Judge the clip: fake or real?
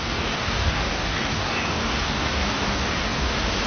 fake